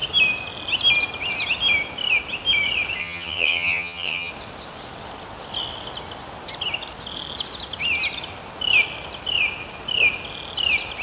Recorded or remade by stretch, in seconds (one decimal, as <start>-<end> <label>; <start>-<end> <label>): 0.0-3.0 recorded; 3.0-4.3 remade; 4.3-11.0 recorded